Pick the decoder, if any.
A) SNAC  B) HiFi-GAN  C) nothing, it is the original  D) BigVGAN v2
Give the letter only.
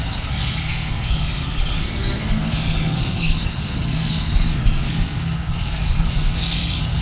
A